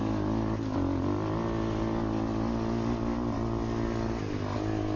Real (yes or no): yes